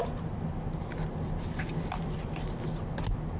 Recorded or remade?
recorded